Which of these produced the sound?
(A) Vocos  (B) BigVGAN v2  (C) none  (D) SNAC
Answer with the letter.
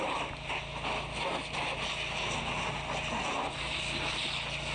C